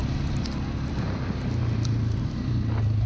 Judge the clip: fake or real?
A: real